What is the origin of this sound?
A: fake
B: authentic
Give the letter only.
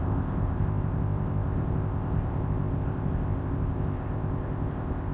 A